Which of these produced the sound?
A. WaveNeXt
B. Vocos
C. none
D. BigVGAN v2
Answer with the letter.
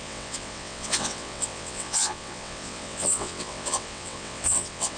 A